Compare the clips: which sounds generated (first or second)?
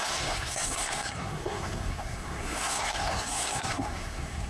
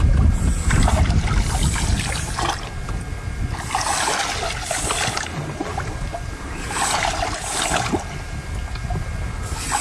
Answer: first